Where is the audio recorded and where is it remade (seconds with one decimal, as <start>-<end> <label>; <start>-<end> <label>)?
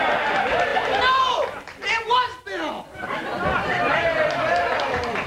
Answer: 0.0-5.3 recorded